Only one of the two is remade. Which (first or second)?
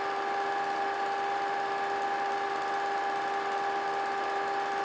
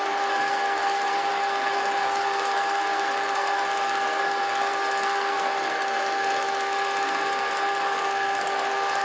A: second